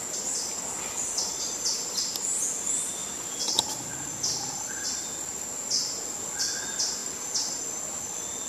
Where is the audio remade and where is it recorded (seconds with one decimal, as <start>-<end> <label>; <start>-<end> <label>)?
0.0-8.5 recorded